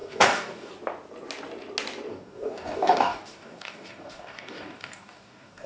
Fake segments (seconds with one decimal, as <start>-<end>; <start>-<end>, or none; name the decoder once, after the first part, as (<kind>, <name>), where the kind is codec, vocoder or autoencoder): 0.0-0.7 (codec, DAC); 2.1-5.7

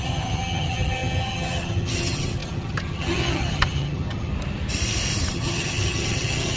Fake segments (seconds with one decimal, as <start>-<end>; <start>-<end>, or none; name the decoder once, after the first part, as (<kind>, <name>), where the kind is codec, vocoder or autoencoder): 0.0-4.3 (vocoder, HiFi-GAN); 5.3-6.6

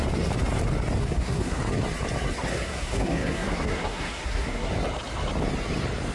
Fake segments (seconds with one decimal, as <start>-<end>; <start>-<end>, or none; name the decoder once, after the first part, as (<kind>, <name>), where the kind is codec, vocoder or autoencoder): 1.0-1.6 (codec, SNAC); 2.5-4.7

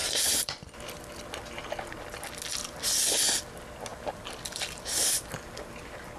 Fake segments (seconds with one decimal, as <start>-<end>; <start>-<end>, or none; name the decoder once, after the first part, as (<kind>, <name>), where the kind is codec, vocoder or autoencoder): 0.0-0.7 (vocoder, BigVGAN v2); 3.9-5.3

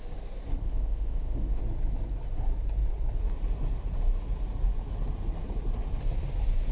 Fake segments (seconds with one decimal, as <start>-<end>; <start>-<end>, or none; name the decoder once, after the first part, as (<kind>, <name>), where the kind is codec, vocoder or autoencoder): 0.6-1.6 (autoencoder, DAC-VAE)

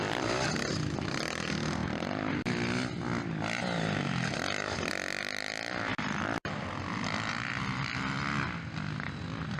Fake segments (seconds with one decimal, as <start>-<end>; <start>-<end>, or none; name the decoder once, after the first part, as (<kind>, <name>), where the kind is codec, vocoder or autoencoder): 5.9-7.3 (vocoder, BigVGAN v2)

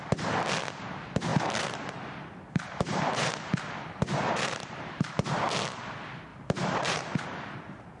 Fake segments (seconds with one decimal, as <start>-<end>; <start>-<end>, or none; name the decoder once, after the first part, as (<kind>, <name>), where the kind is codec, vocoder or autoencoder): 1.3-5.4 (vocoder, BigVGAN v2); 6.3-8.0

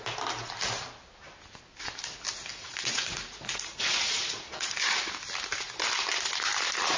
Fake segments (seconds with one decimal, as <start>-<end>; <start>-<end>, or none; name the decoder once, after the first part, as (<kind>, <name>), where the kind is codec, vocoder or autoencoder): 2.5-5.1 (vocoder, Vocos)